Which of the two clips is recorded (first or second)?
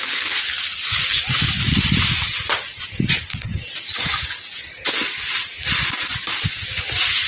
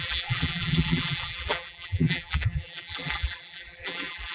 first